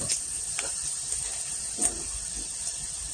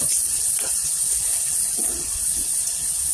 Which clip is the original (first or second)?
first